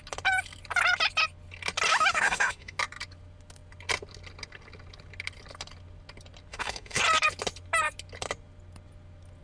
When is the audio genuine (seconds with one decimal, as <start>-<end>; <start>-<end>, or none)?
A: 0.0-1.9; 2.8-6.5; 7.0-9.4